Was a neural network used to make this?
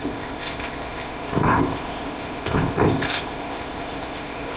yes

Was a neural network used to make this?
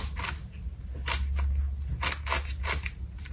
no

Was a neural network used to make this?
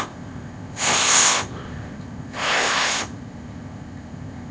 yes